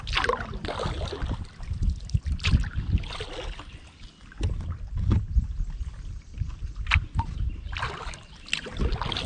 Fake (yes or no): no